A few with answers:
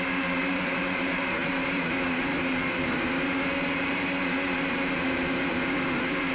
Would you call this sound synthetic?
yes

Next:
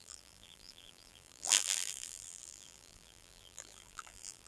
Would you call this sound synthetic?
yes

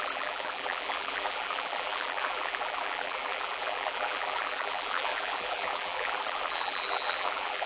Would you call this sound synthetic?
yes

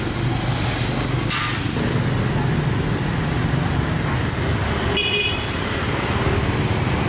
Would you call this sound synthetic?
no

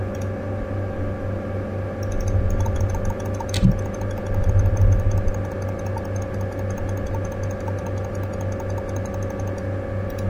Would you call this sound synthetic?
no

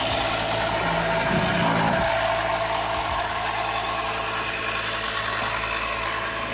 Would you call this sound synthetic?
no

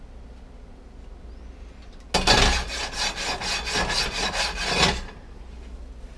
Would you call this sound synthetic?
no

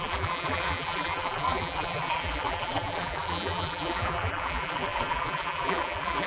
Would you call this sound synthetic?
yes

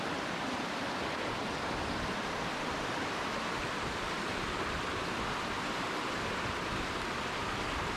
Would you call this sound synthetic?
yes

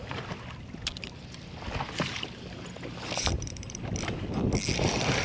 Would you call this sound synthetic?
no